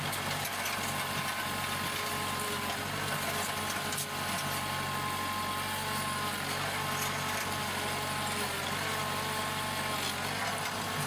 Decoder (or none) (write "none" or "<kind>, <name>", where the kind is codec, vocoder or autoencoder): none